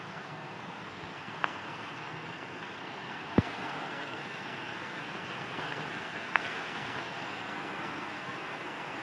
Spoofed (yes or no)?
yes